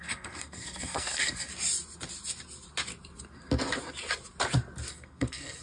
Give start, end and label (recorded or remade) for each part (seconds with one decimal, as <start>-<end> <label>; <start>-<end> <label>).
0.0-1.5 remade; 1.5-4.9 recorded; 4.9-5.6 remade